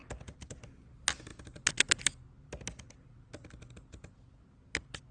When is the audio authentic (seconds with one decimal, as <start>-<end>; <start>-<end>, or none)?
0.0-5.1